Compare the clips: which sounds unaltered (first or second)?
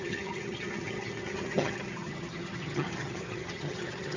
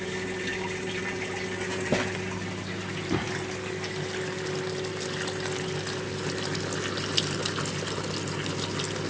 second